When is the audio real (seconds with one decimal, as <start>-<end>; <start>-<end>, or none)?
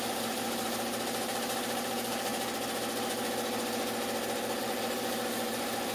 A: 2.3-4.6